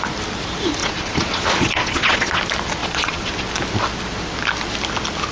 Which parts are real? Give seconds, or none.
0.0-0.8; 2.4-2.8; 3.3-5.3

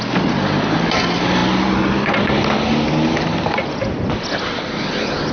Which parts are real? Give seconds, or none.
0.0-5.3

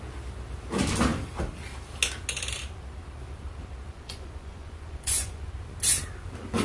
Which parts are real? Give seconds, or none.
0.0-3.9; 5.5-6.6

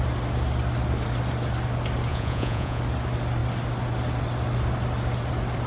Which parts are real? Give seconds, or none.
0.0-2.1; 2.8-5.7

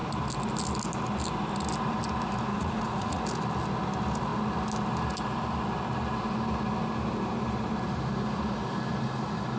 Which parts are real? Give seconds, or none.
0.0-2.5; 3.2-9.6